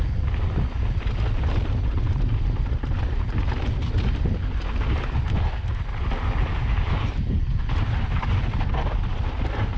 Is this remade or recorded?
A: recorded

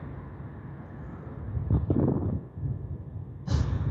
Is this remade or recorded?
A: recorded